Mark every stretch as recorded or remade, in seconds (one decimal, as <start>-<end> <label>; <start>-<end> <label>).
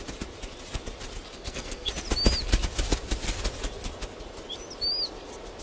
0.0-1.3 recorded; 1.3-1.9 remade; 1.9-5.6 recorded